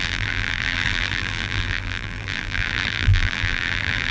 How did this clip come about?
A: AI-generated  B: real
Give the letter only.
A